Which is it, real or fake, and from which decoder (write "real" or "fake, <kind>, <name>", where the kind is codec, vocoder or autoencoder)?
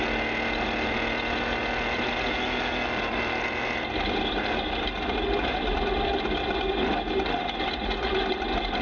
real